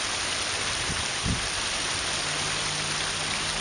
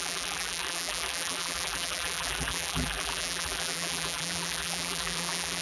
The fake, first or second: second